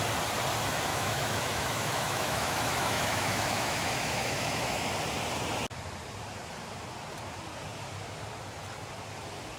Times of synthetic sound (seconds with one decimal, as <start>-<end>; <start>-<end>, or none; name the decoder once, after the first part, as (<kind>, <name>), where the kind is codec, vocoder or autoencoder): 0.9-4.9 (autoencoder, DAC-VAE)